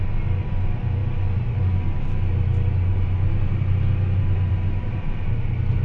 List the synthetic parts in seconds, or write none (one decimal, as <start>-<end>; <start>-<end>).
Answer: none